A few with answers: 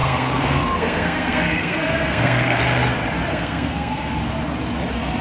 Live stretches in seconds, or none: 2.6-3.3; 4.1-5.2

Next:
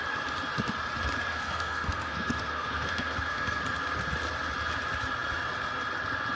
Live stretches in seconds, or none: 0.0-1.3; 3.6-6.3

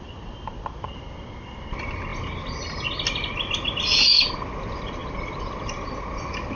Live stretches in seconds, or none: 0.0-6.6

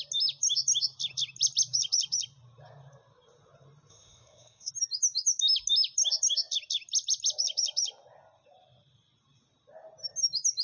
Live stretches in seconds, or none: 0.0-3.9; 4.7-10.6